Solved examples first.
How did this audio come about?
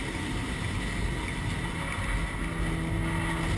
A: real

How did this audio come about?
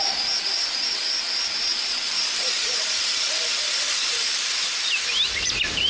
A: fake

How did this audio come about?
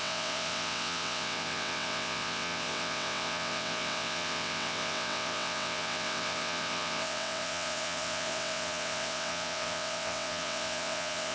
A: fake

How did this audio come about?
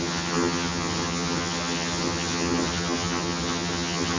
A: fake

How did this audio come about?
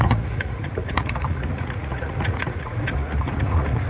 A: fake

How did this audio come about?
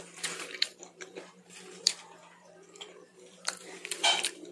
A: fake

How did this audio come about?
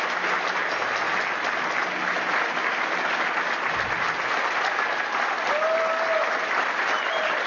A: real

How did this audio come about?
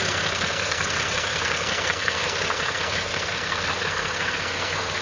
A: fake